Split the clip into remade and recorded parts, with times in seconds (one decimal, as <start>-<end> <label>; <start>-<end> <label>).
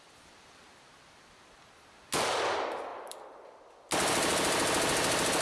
0.0-2.9 recorded; 2.9-3.7 remade; 3.7-5.4 recorded